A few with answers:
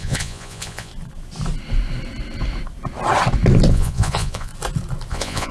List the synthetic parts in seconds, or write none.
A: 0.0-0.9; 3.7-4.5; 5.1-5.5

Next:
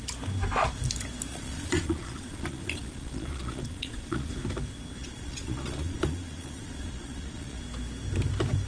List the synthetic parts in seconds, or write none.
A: 1.3-4.3; 5.0-7.6

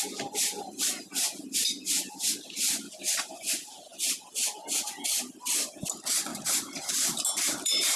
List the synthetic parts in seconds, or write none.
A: 6.3-8.0